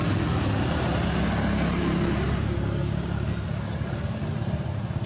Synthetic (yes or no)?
no